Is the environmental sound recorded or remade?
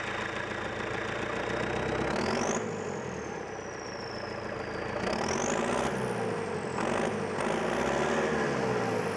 recorded